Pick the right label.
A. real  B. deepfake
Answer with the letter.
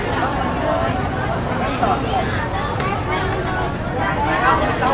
A